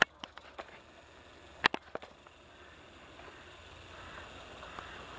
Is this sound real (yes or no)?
yes